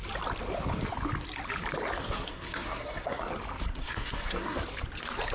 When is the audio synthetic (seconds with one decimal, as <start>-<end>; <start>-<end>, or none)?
2.0-3.2; 3.8-4.6